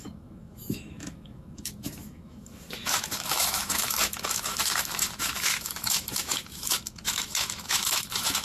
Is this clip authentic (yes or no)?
no